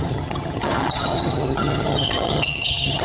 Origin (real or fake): fake